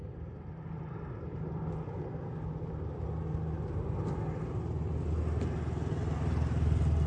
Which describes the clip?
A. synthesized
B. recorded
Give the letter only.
B